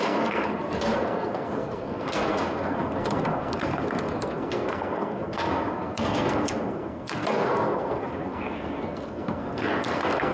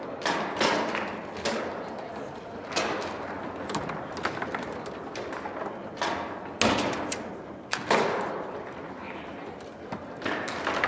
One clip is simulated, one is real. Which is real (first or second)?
second